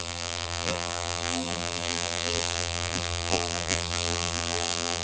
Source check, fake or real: fake